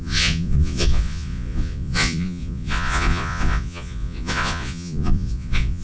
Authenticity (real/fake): fake